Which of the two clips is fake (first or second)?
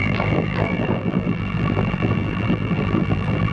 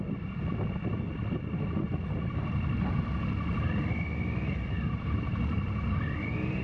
first